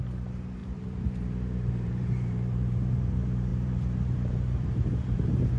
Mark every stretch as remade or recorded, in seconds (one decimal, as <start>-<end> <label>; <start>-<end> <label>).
0.0-0.6 recorded; 0.6-3.1 remade; 3.1-3.5 recorded; 3.5-5.6 remade